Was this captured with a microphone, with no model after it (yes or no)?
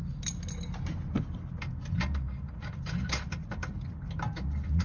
yes